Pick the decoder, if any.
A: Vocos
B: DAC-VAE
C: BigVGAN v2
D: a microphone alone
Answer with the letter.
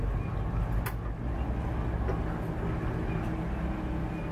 D